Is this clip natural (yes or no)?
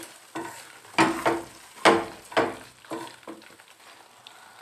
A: yes